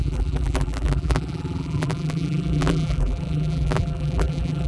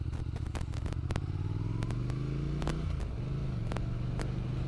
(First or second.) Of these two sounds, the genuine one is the second